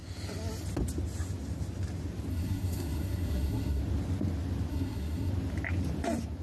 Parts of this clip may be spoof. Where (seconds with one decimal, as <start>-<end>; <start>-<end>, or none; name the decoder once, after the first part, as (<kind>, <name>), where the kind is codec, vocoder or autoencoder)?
2.3-3.8 (codec, SNAC); 4.7-5.3